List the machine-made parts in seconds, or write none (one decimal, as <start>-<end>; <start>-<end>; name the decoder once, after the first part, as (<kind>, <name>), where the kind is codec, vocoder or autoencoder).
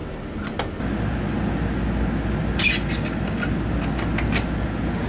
none